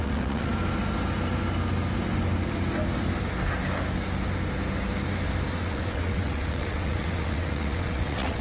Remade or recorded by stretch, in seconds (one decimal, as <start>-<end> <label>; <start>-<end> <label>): 0.0-0.5 remade; 0.5-5.5 recorded; 5.5-8.4 remade